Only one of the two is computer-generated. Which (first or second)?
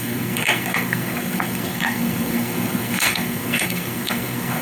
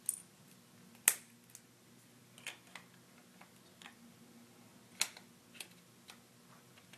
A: first